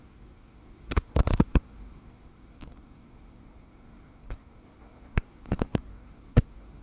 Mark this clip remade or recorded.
remade